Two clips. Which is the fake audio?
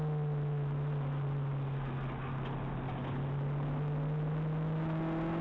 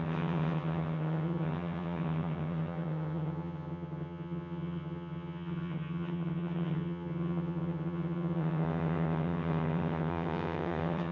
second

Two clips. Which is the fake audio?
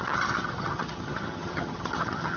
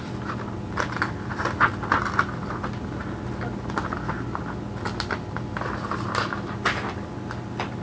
first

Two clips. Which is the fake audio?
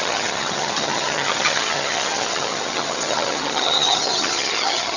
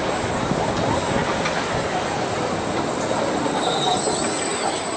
first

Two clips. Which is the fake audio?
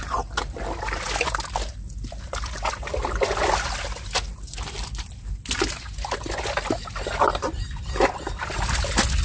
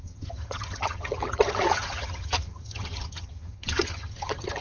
second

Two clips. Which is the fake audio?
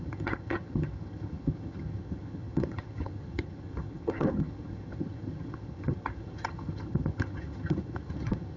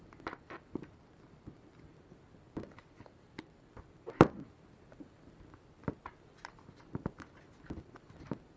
first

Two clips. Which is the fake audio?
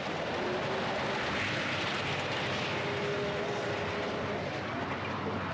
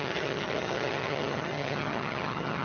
second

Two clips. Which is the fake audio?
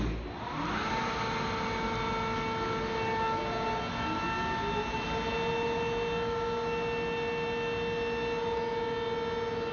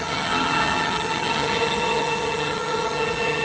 second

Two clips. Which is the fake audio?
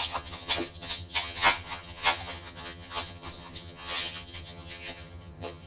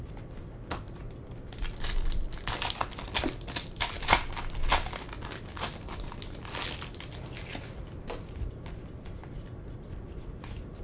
first